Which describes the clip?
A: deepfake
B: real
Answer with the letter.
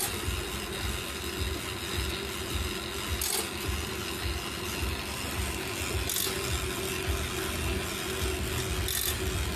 B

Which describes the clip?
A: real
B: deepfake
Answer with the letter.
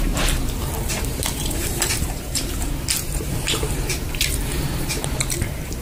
B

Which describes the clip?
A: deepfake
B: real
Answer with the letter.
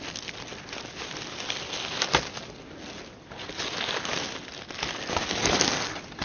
B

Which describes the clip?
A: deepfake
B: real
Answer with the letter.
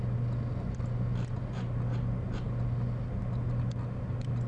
B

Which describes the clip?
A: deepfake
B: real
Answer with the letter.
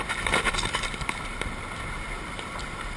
A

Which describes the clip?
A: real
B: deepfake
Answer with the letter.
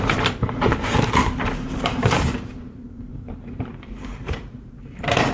B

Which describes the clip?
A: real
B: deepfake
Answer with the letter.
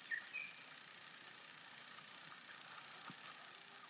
A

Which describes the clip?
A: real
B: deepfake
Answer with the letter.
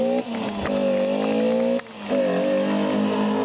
A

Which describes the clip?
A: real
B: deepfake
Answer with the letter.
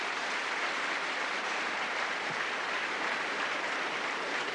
B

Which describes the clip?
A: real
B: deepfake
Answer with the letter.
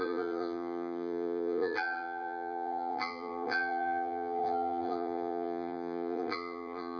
B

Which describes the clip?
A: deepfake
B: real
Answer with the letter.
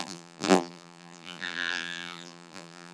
A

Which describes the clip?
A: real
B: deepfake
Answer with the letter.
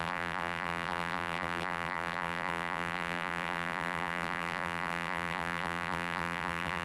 B